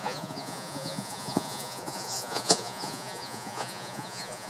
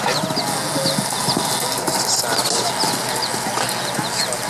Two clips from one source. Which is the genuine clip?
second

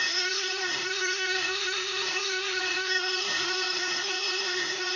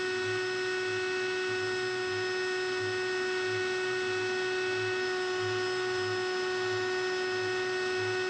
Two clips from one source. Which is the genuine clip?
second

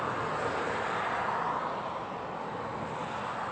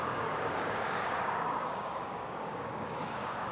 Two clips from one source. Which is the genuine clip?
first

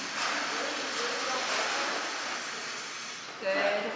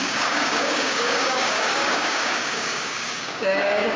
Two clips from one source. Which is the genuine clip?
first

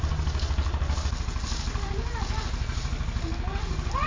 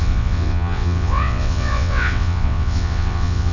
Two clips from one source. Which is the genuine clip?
first